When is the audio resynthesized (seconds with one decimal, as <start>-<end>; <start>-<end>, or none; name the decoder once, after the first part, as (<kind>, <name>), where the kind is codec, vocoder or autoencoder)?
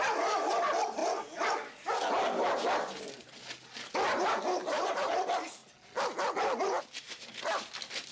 4.6-5.1 (vocoder, BigVGAN v2)